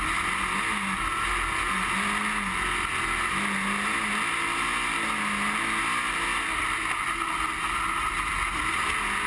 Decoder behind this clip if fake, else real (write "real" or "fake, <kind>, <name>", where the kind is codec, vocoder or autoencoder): real